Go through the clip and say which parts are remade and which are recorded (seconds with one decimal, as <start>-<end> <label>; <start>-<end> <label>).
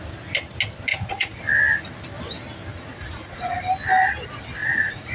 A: 0.0-0.9 recorded; 0.9-1.4 remade; 1.4-2.7 recorded; 2.7-3.6 remade; 3.6-4.6 recorded; 4.6-5.1 remade